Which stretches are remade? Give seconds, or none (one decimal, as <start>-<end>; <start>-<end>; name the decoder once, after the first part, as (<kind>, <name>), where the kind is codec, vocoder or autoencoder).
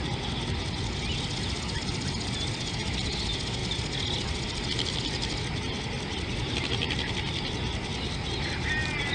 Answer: none